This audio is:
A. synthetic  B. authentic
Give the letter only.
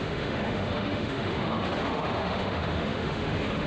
A